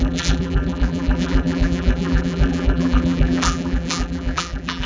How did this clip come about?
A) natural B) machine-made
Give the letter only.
B